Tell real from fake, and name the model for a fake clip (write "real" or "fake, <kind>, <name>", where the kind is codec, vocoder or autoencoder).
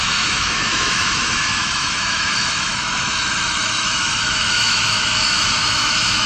fake, autoencoder, DAC-VAE